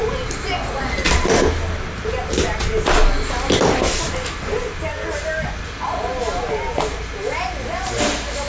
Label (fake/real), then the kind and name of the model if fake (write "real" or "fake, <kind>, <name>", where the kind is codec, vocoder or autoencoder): real